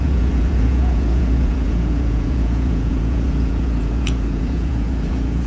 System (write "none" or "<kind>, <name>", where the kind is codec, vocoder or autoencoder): vocoder, Vocos